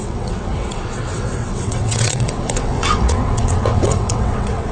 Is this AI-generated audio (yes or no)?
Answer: yes